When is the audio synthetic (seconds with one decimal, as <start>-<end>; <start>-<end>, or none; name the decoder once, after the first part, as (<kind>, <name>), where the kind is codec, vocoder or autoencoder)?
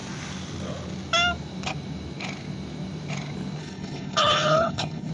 3.6-5.1 (codec, HILCodec)